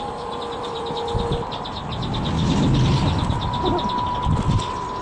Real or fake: real